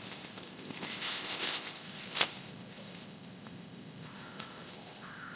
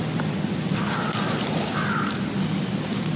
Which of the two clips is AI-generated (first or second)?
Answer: first